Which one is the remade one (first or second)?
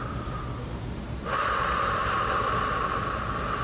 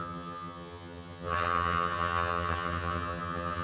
second